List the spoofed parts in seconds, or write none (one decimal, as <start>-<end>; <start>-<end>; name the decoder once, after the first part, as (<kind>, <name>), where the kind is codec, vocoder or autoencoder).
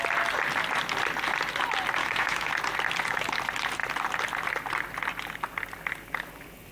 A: 2.0-2.5 (autoencoder, DAC-VAE)